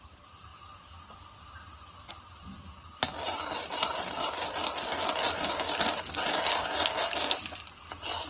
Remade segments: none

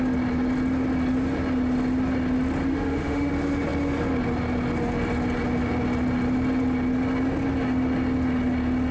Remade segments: 2.7-3.3 (autoencoder, DAC-VAE)

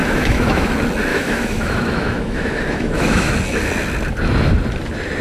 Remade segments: 0.0-0.7 (autoencoder, DAC-VAE); 1.1-3.3

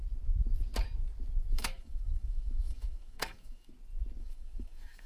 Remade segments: 1.5-3.7 (autoencoder, DAC-VAE); 4.2-5.1